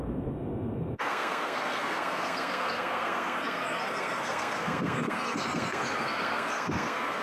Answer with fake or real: fake